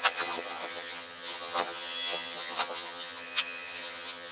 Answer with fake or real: fake